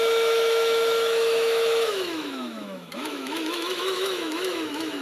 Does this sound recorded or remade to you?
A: remade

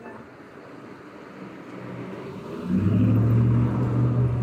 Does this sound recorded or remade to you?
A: recorded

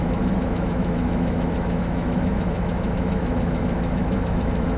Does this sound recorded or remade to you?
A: remade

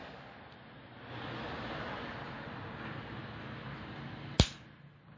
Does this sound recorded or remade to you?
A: recorded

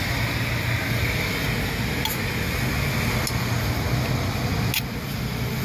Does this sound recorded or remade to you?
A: recorded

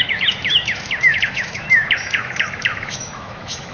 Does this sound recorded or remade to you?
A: remade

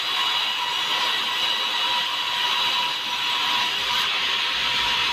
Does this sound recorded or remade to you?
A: recorded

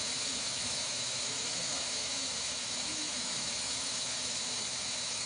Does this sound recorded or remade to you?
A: remade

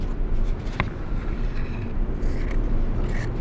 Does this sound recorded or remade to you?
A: recorded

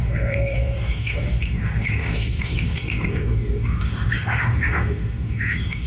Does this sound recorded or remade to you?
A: remade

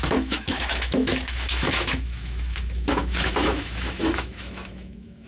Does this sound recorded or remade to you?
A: remade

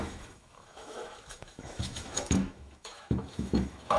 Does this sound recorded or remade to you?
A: remade